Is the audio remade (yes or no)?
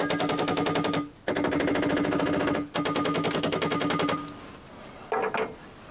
no